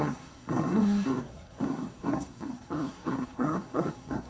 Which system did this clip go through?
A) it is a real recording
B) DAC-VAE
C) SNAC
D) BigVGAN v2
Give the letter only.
C